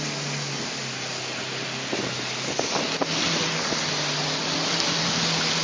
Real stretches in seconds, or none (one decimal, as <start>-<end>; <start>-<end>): 0.0-5.6